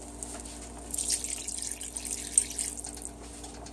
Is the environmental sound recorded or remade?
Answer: recorded